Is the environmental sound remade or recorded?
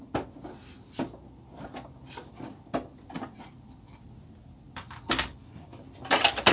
remade